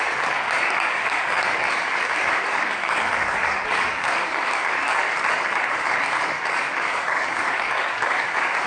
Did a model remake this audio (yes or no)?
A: yes